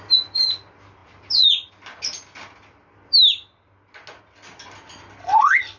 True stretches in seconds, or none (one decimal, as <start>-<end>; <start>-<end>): 0.0-5.2